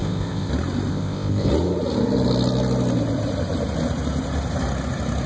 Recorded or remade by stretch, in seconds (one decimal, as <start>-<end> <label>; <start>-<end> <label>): 0.0-0.5 remade; 0.5-0.9 recorded; 0.9-1.5 remade; 1.5-5.3 recorded